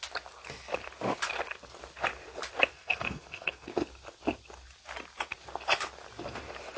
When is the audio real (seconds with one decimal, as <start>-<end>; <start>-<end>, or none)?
0.0-2.7; 3.7-6.8